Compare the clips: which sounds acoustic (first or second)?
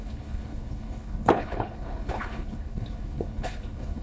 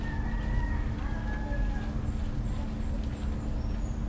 second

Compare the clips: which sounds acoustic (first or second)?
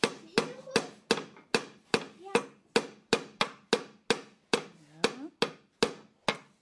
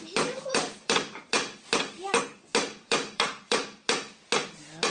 first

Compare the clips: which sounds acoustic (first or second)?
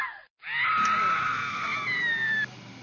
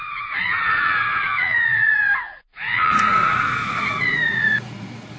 first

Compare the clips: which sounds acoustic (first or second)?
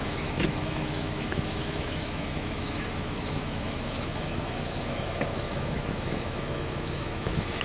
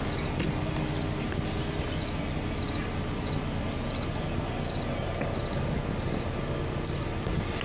second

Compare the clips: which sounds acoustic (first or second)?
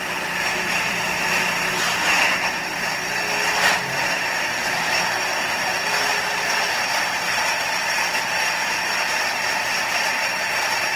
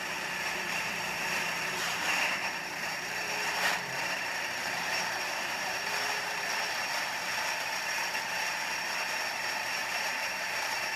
first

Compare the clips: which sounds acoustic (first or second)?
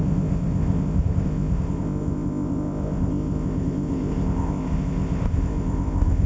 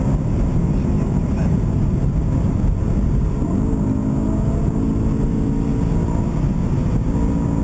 second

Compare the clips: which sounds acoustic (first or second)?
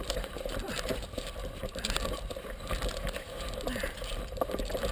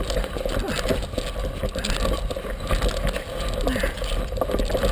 second